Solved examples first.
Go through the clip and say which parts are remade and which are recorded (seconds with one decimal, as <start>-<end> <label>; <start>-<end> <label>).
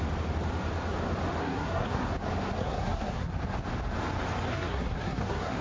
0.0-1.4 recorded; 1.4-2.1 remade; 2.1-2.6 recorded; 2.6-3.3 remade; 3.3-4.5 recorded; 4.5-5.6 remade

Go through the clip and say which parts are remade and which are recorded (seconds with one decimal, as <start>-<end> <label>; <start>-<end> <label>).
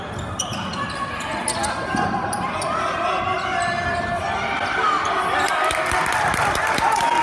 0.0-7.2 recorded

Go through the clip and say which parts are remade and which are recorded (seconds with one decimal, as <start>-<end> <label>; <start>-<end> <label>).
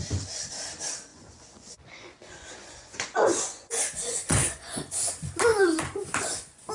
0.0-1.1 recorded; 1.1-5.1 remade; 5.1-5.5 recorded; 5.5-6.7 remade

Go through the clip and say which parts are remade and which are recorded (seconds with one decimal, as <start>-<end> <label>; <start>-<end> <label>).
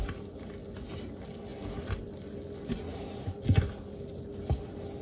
0.0-5.0 recorded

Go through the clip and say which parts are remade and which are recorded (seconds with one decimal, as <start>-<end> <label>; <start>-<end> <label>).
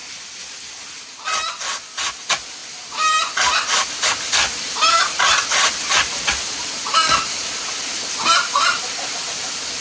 0.0-0.6 remade; 0.6-9.8 recorded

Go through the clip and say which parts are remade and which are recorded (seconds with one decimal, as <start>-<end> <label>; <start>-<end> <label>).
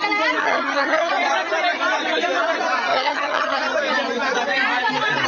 0.0-0.4 recorded; 0.4-1.1 remade; 1.1-2.9 recorded; 2.9-3.6 remade; 3.6-5.3 recorded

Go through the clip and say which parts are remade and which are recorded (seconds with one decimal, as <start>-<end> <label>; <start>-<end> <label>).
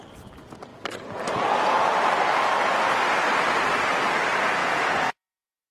0.0-4.6 recorded; 4.6-5.7 remade